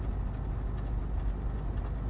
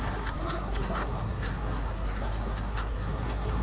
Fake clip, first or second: second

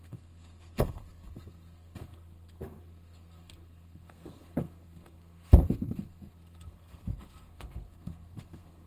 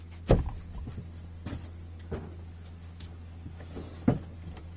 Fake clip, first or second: first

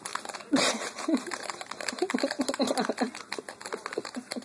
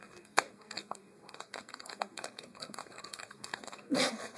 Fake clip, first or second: second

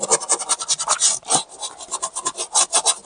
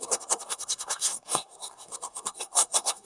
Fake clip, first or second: second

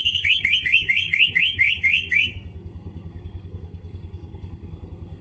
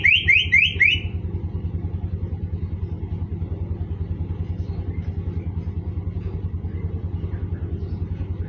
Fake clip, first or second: first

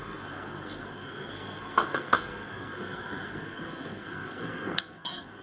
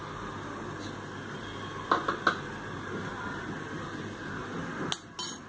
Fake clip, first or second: first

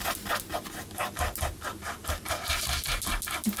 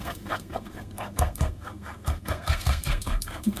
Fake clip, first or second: second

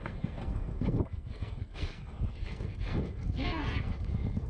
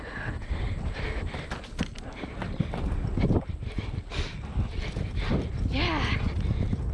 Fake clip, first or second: first